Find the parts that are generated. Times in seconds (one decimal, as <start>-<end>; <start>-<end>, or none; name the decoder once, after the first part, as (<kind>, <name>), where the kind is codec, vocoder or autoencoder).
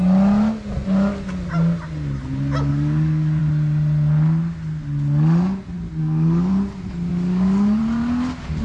2.7-3.4 (codec, DAC); 6.0-6.5; 7.1-7.8